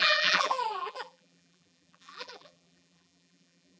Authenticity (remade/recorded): remade